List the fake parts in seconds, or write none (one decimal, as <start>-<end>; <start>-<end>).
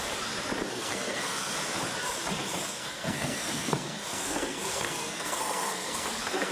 0.7-1.5; 2.5-6.5